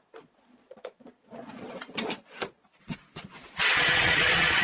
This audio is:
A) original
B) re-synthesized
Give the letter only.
B